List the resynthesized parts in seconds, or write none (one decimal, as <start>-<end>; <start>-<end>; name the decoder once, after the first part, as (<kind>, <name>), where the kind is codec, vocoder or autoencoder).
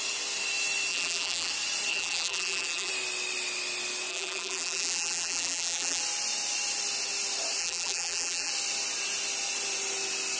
0.9-1.5 (vocoder, BigVGAN v2); 1.9-2.9; 4.1-6.0; 7.6-8.5